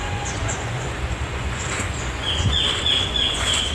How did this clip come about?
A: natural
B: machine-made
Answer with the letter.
B